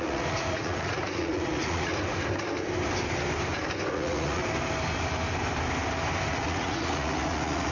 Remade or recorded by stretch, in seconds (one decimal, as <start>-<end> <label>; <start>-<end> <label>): 0.0-1.9 remade; 1.9-3.9 recorded; 3.9-4.4 remade; 4.4-6.3 recorded; 6.3-7.7 remade